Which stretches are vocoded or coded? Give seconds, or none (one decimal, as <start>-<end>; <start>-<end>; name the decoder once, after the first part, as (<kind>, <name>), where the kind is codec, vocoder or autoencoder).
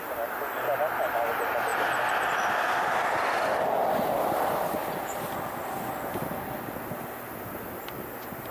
none